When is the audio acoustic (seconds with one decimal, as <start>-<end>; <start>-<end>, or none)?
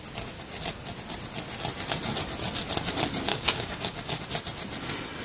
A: 0.0-3.3; 4.2-5.2